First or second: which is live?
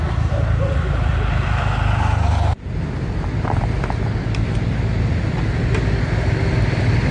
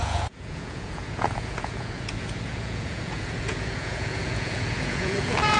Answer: first